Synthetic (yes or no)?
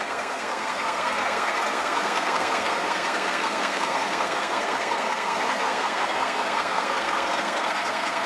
yes